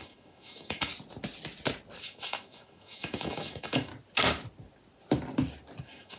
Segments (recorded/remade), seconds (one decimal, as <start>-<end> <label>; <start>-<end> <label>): 0.0-0.9 remade; 0.9-2.0 recorded; 2.0-3.9 remade; 3.9-5.8 recorded; 5.8-6.2 remade